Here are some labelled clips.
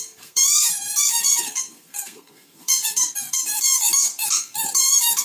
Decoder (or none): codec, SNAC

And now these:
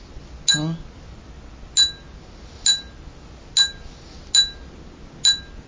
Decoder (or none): none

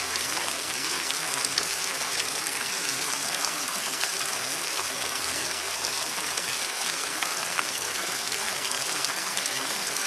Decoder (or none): codec, SNAC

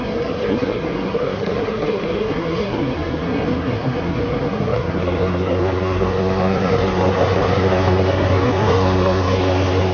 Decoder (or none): codec, SNAC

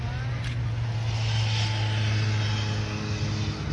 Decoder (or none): none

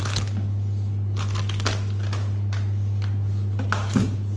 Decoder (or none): none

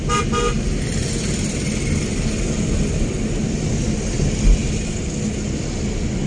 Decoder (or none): none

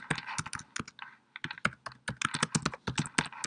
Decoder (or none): none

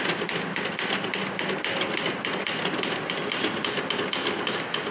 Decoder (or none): none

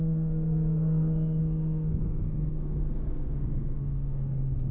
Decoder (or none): codec, SNAC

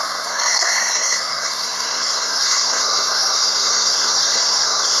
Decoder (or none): codec, SNAC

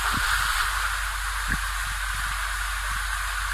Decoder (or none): none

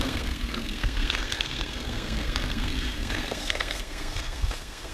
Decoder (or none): codec, SNAC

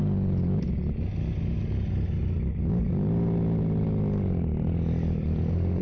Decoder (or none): none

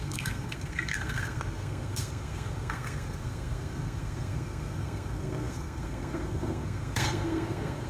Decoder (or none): codec, SNAC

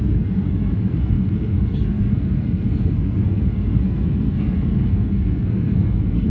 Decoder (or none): codec, SNAC